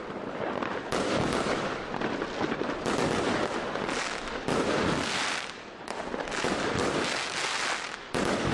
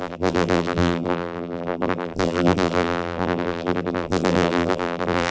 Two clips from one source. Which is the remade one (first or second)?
second